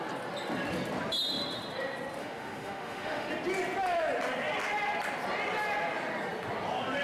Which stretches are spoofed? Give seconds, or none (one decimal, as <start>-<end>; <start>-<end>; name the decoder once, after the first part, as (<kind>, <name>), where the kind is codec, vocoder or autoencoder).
2.2-3.3 (autoencoder, DAC-VAE)